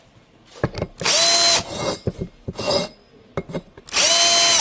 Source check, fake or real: real